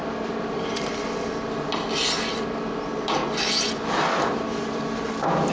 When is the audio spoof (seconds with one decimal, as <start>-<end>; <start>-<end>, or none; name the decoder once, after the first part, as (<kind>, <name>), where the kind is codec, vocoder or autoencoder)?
none